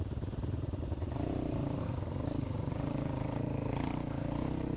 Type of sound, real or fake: fake